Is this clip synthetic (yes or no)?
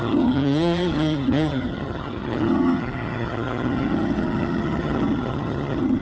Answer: yes